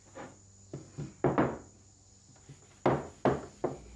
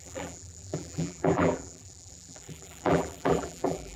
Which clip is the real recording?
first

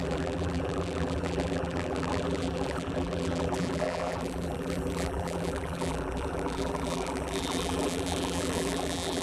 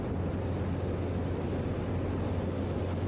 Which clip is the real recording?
second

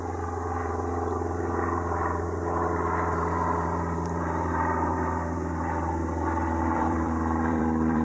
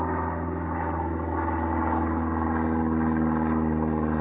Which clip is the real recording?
second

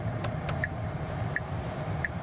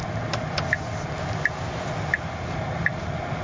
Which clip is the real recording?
second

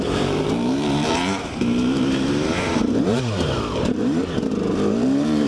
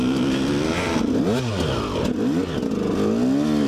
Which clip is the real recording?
second